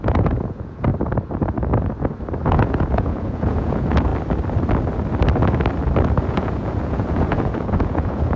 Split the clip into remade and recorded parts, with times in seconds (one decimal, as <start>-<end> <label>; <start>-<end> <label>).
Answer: 0.0-0.9 remade; 0.9-2.5 recorded; 2.5-4.1 remade; 4.1-6.2 recorded; 6.2-8.4 remade